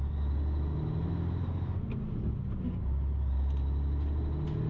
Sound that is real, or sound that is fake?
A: real